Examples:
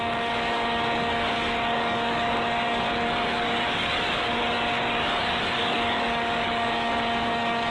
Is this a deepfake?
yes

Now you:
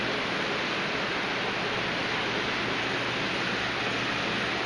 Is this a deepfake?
no